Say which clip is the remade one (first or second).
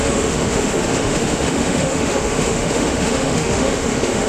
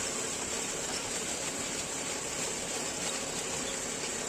first